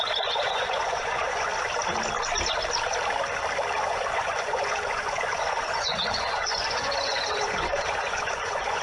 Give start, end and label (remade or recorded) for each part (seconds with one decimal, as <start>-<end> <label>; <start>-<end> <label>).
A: 0.0-1.5 remade; 1.5-3.8 recorded; 3.8-8.8 remade